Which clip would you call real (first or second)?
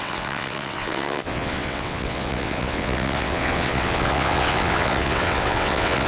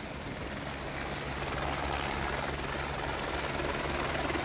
second